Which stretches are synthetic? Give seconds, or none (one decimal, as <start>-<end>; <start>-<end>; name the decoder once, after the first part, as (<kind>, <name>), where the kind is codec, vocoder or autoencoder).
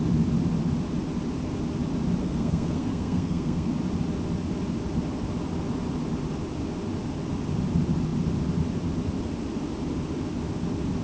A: 2.2-3.7 (codec, SNAC)